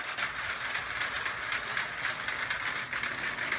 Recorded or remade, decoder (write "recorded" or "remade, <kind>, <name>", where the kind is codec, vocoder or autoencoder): recorded